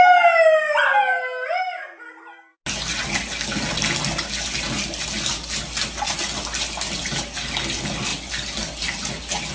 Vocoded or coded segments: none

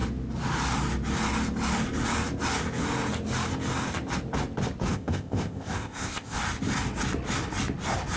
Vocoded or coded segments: 4.9-6.4 (codec, ZipCodec)